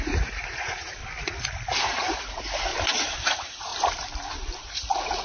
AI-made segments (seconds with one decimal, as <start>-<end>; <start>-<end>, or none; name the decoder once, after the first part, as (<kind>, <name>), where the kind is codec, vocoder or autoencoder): 0.0-1.0 (vocoder, Vocos); 1.8-2.7; 3.2-3.7; 4.6-5.2